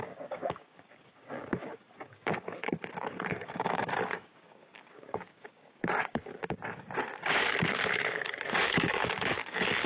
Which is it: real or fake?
fake